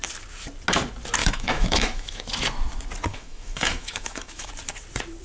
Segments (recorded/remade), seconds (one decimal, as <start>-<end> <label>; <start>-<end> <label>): 0.0-1.2 recorded; 1.2-2.2 remade; 2.2-3.1 recorded; 3.1-4.5 remade; 4.5-5.2 recorded